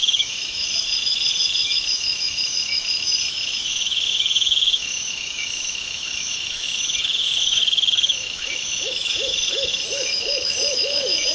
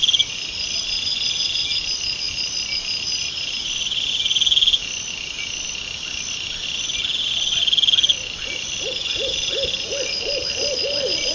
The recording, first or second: second